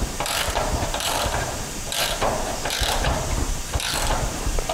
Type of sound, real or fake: fake